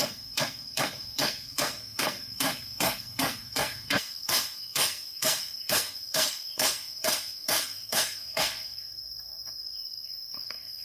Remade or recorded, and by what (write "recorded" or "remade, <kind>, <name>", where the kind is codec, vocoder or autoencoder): remade, codec, SNAC